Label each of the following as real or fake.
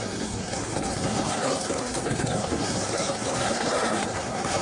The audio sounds fake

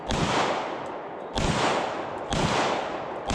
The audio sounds real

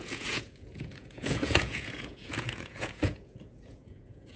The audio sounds fake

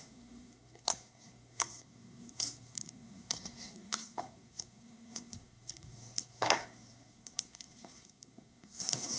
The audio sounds fake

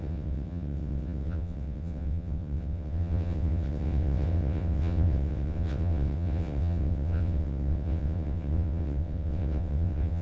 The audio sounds fake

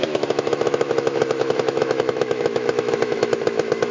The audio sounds fake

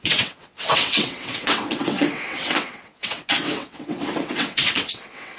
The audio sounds fake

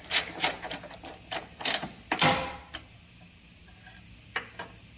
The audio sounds real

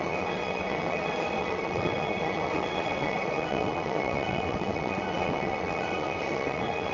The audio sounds fake